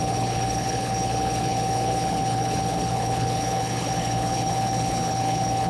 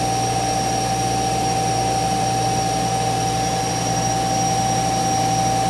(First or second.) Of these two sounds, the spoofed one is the first